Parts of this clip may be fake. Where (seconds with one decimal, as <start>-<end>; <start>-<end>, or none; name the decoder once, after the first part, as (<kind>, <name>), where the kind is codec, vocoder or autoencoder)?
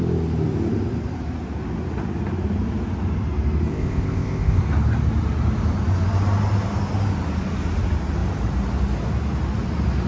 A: 3.7-4.6 (codec, ZipCodec)